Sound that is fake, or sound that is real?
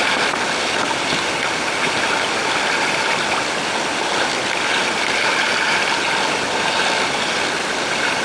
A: real